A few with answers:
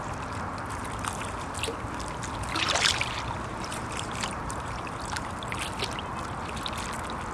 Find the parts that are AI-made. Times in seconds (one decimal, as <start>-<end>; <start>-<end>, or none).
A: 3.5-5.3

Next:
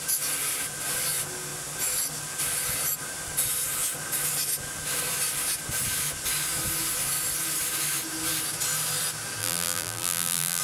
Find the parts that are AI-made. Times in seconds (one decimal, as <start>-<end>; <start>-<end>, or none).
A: 9.4-10.6

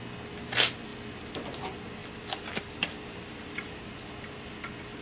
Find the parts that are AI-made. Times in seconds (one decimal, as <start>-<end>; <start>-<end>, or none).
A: 2.0-4.5

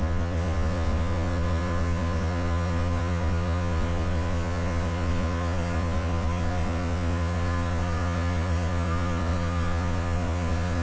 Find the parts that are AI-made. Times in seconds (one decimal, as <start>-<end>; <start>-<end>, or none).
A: 0.0-10.8

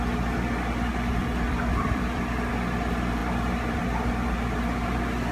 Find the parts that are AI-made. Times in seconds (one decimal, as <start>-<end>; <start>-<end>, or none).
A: 0.9-2.5

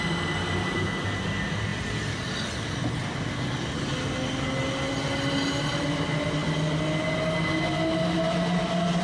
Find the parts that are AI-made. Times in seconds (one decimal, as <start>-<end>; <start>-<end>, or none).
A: none